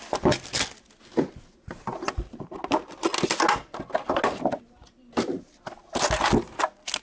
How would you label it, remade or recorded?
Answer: recorded